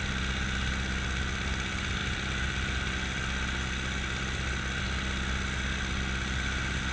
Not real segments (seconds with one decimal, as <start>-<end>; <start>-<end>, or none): none